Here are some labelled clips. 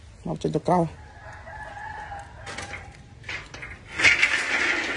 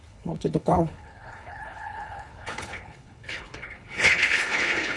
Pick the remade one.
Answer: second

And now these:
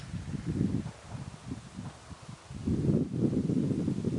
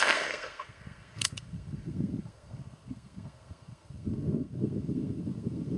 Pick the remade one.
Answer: second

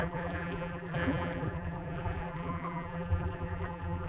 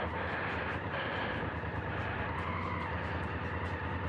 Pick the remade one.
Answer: first